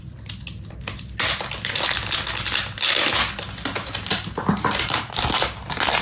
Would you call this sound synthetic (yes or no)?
no